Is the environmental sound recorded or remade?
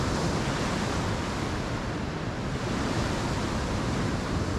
recorded